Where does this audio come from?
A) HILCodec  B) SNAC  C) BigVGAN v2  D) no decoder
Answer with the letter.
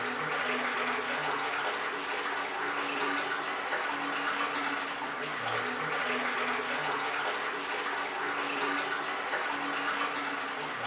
D